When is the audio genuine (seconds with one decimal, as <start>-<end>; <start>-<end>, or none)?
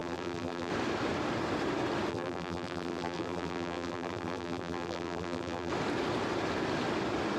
0.7-2.1; 5.7-7.4